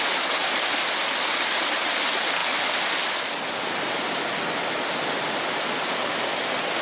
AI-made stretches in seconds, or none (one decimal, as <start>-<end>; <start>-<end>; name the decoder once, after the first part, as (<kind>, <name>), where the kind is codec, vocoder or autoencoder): 0.4-1.3 (vocoder, BigVGAN v2)